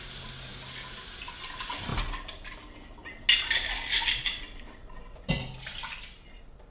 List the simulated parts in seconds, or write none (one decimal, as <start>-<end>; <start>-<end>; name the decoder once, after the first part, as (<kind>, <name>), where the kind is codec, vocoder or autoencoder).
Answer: none